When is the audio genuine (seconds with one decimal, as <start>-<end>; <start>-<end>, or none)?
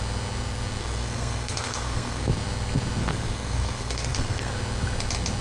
0.0-0.8; 2.3-3.0; 4.5-5.4